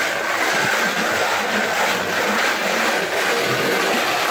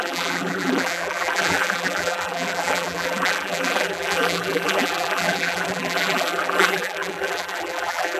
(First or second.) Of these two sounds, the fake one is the second